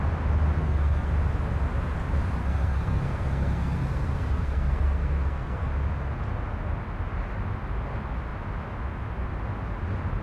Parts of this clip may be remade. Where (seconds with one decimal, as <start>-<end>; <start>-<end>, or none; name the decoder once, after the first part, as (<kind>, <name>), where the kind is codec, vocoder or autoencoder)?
0.6-1.1 (codec, SNAC); 2.4-5.7